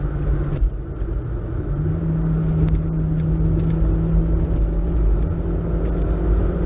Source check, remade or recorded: recorded